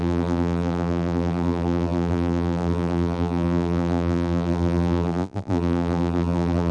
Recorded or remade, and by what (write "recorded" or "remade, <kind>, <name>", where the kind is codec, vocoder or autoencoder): remade, vocoder, BigVGAN v2